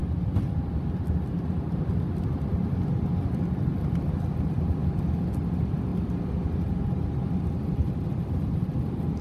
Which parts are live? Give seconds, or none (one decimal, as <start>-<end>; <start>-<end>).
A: 0.0-9.2